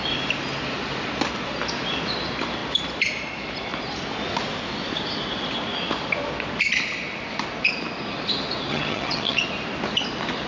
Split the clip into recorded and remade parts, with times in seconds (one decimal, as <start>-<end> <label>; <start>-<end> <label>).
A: 0.0-8.7 recorded; 8.7-9.4 remade; 9.4-10.5 recorded